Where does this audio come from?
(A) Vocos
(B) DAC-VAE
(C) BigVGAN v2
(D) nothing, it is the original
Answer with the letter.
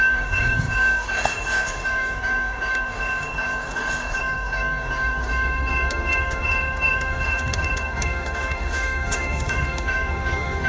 B